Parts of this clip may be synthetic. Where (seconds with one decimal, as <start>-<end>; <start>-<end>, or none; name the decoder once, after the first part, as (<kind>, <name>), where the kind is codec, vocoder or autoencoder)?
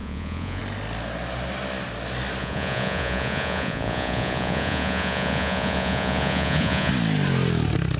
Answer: 0.0-0.6 (vocoder, Vocos); 2.4-6.9